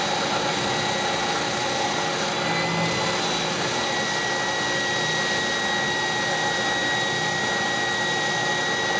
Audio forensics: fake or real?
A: real